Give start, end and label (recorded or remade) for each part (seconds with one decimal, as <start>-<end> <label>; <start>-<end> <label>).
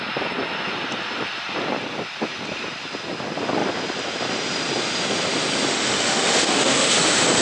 0.0-5.7 recorded; 5.7-6.9 remade; 6.9-7.4 recorded